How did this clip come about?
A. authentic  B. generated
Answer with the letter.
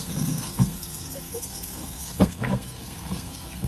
B